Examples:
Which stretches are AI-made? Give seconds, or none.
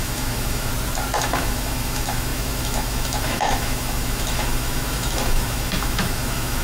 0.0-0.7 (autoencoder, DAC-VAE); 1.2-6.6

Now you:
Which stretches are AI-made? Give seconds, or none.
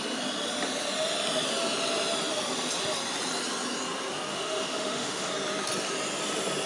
4.3-5.3 (autoencoder, DAC-VAE)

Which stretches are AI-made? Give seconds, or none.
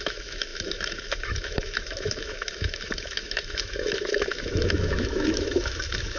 0.0-6.2 (autoencoder, DAC-VAE)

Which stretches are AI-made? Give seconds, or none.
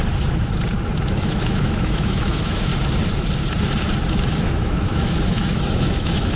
1.1-2.7 (autoencoder, DAC-VAE); 4.1-6.4